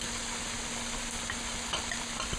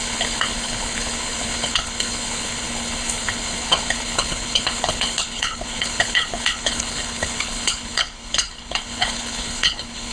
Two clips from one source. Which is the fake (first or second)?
second